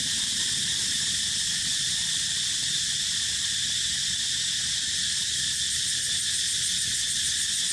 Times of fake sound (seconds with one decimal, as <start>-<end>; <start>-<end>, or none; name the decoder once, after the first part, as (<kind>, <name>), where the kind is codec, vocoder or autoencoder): none